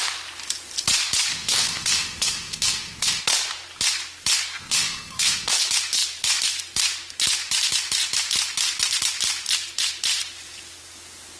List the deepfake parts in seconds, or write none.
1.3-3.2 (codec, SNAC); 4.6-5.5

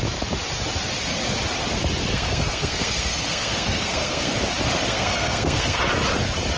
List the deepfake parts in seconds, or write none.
2.1-4.3 (codec, SNAC); 4.9-5.8

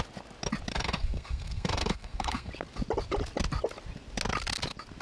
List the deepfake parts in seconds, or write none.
0.7-2.5 (codec, SNAC)